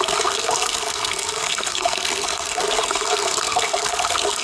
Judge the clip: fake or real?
fake